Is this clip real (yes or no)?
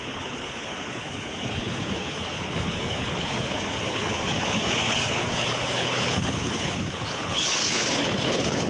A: no